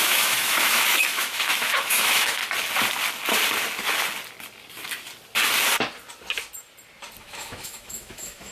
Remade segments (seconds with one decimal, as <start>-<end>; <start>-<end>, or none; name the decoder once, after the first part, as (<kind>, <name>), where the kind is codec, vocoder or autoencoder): 0.0-2.4 (autoencoder, DAC-VAE); 7.2-8.5